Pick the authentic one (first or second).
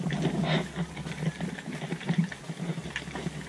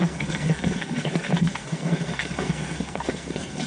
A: first